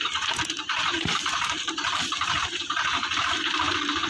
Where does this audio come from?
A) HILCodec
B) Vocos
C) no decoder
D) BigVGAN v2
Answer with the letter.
D